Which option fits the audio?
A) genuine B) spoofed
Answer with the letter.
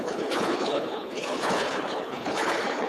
B